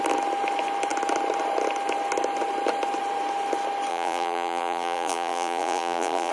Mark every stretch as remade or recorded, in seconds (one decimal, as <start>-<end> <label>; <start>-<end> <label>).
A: 0.0-3.9 recorded; 3.9-6.3 remade

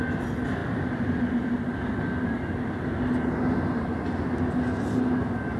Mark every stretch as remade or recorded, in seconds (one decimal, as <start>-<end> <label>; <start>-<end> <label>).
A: 0.0-0.6 recorded; 0.6-4.0 remade; 4.0-5.6 recorded